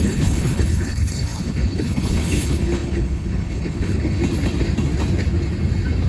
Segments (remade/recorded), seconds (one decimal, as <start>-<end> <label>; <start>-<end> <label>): 0.0-4.2 remade; 4.2-6.1 recorded